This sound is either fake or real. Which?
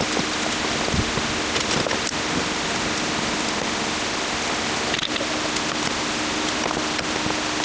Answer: real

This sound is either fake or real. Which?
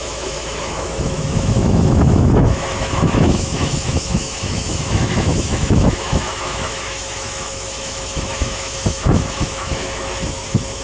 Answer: fake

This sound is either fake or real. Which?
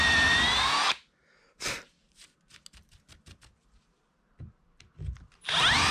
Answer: real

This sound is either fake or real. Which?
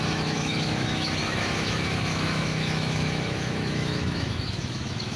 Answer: fake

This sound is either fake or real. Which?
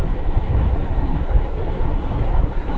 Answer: fake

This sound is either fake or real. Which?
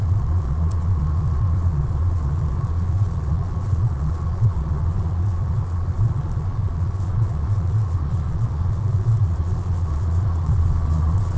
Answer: fake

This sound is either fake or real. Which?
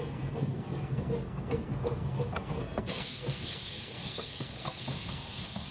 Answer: fake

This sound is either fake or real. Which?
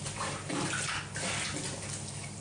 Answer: real